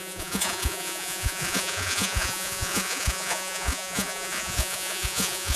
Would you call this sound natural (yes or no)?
no